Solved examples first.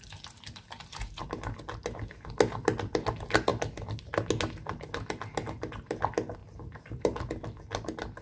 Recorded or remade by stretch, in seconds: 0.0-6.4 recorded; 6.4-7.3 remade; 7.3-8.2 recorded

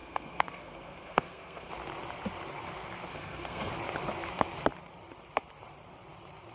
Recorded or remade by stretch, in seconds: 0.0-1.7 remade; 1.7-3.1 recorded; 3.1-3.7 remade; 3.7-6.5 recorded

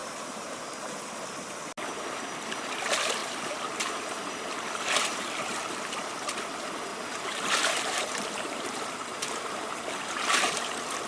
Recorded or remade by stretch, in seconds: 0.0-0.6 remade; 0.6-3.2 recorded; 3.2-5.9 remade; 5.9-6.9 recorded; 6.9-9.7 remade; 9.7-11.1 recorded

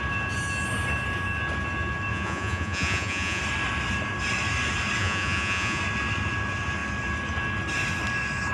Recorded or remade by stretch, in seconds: 0.0-2.1 recorded; 2.1-3.4 remade; 3.4-5.0 recorded; 5.0-5.8 remade; 5.8-8.5 recorded

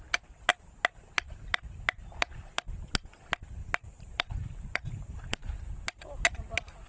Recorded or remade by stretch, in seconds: 0.0-0.5 recorded; 0.5-2.0 remade; 2.0-3.6 recorded; 3.6-5.6 remade; 5.6-6.9 recorded

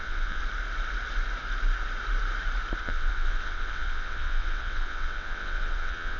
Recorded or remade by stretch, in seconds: 0.0-0.4 remade; 0.4-2.8 recorded; 2.8-6.2 remade

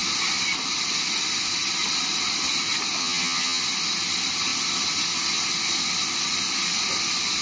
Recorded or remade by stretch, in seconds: 0.0-3.0 recorded; 3.0-3.6 remade; 3.6-7.4 recorded

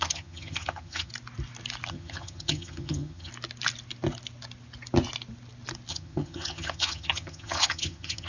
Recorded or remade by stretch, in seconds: 0.0-1.1 remade; 1.1-1.9 recorded; 1.9-3.3 remade; 3.3-5.9 recorded; 5.9-8.3 remade